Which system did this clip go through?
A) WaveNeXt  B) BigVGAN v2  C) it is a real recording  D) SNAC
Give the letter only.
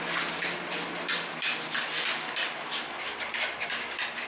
C